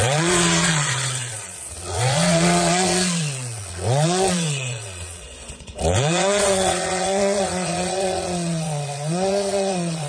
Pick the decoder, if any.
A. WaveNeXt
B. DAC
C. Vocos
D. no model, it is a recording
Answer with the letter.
C